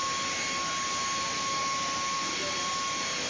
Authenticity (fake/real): real